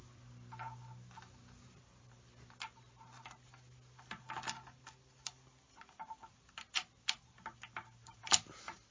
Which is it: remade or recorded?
recorded